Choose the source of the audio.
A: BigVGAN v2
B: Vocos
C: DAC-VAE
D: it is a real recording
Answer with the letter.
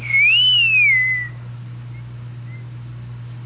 D